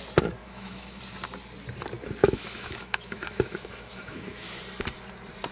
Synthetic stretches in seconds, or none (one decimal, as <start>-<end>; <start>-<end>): 0.4-1.0; 2.2-4.6